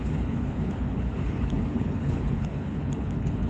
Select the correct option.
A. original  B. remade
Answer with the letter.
B